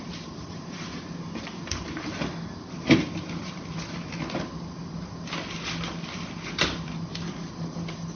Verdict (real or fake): real